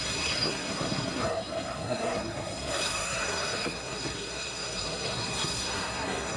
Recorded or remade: remade